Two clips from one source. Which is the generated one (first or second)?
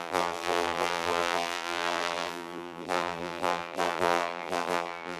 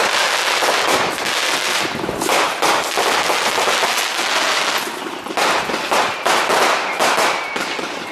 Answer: first